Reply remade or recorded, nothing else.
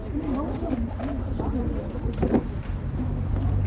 recorded